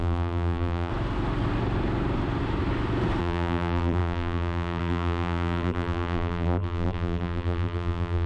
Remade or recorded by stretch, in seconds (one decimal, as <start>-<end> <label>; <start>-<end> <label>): 0.0-0.9 remade; 0.9-3.2 recorded; 3.2-8.3 remade